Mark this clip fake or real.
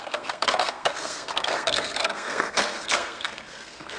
fake